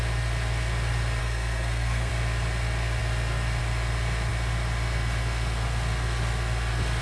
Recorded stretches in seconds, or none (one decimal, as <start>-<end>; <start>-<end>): 0.0-1.2; 2.1-7.0